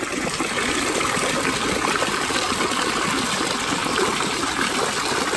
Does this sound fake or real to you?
real